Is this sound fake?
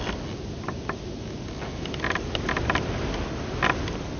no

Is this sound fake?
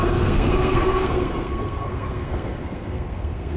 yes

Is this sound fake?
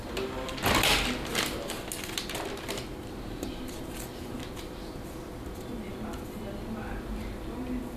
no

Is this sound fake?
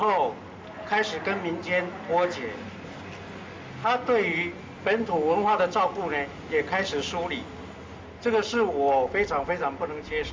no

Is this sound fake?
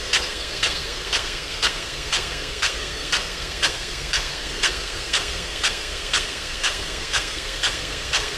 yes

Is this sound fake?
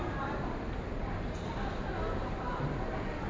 no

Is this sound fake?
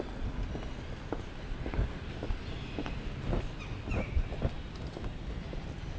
no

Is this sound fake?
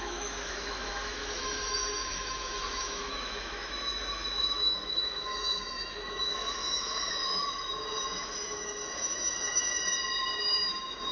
yes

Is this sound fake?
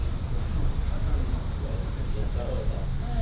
no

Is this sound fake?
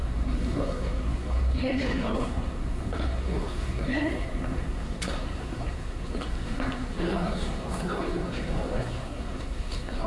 yes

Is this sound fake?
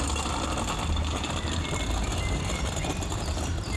no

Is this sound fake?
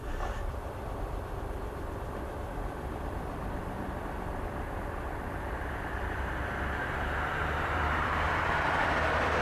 yes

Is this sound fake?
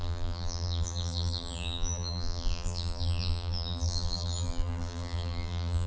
yes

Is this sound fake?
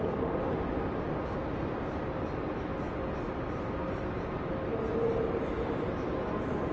no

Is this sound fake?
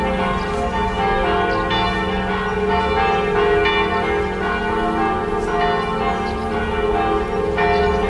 no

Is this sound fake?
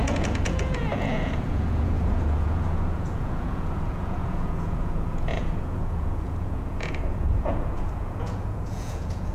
yes